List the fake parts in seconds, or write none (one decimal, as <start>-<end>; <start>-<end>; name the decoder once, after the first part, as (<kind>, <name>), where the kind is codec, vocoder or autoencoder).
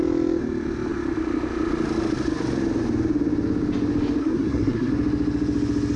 4.2-4.9 (codec, SNAC)